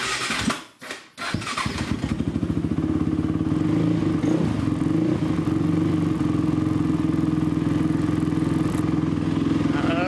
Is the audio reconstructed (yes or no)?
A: no